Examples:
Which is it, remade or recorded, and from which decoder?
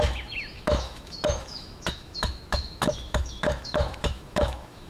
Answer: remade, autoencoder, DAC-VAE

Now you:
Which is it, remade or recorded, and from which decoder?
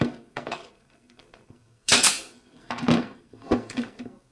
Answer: remade, codec, SNAC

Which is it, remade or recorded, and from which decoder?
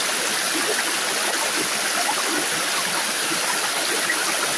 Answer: recorded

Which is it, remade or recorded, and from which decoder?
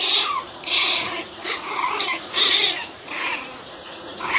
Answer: remade, vocoder, Vocos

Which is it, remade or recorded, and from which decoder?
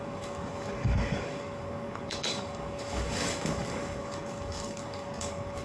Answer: remade, codec, DAC